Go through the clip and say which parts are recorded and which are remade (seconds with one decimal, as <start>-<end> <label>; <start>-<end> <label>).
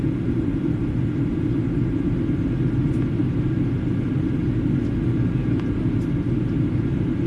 0.0-7.3 recorded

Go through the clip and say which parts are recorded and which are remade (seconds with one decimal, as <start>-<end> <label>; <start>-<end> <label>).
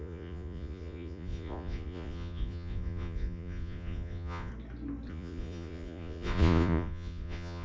0.0-4.5 remade; 4.5-5.1 recorded; 5.1-7.6 remade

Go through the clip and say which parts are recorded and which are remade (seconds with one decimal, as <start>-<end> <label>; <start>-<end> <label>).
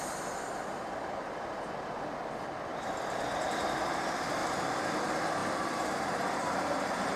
0.0-4.4 recorded; 4.4-5.0 remade; 5.0-5.4 recorded; 5.4-7.2 remade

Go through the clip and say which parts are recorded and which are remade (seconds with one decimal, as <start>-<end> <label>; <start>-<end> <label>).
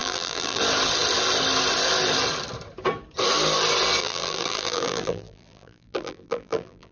0.0-0.6 remade; 0.6-4.0 recorded; 4.0-6.9 remade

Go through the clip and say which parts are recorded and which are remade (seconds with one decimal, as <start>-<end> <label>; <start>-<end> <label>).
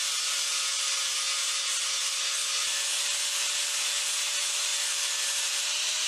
0.0-6.1 recorded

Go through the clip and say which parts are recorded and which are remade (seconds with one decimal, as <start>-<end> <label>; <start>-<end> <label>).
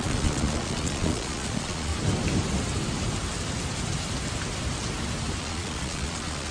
0.0-1.9 remade; 1.9-5.4 recorded; 5.4-6.5 remade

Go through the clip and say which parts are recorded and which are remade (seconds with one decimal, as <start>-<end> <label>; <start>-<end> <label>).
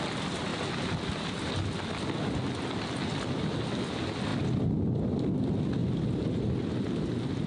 0.0-7.5 recorded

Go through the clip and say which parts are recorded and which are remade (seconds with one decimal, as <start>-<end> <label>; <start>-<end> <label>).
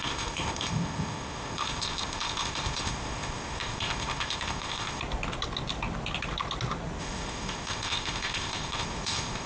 0.0-5.0 remade; 5.0-7.0 recorded; 7.0-9.5 remade